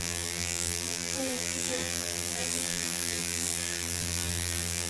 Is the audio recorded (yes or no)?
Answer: no